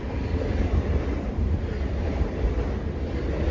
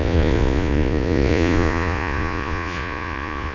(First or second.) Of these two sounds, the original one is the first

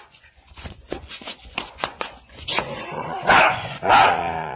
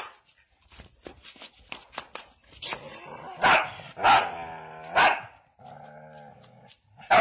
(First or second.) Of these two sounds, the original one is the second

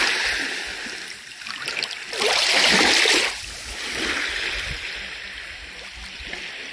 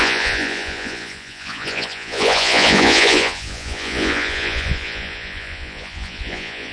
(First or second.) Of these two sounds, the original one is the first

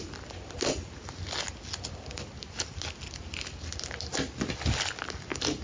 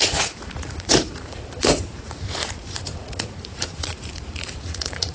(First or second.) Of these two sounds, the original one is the first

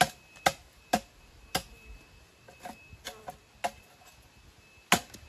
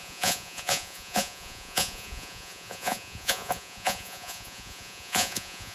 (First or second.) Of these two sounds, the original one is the first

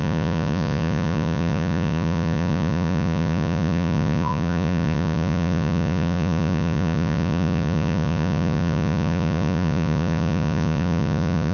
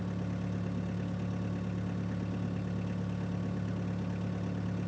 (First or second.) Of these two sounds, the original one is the second